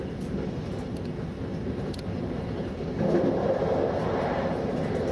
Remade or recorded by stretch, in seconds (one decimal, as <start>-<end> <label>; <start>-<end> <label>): 0.0-5.1 recorded